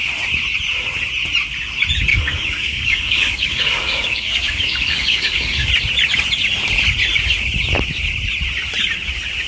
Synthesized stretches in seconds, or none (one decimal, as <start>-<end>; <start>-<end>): 2.1-5.7